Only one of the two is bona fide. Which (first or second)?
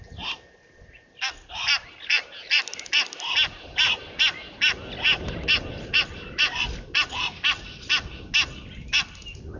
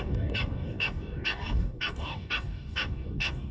first